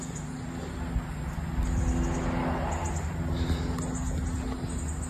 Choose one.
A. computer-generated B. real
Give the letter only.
B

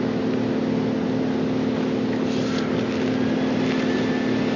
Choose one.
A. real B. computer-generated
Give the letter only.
A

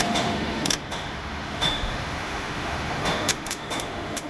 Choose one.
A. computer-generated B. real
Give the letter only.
A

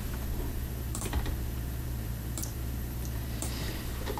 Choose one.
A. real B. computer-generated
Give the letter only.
B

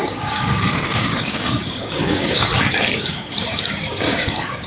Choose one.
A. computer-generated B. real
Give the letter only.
A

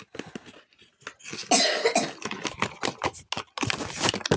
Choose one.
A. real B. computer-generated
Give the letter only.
A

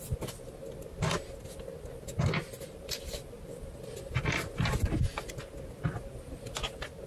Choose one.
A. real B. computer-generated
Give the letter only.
A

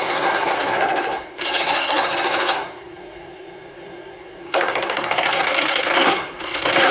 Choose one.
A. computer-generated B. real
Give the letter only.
A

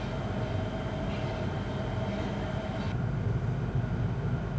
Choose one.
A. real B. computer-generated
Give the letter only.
A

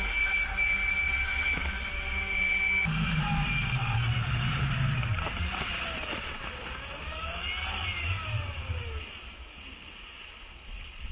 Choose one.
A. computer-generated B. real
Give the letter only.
B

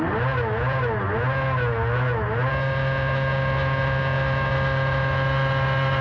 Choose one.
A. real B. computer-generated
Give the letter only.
A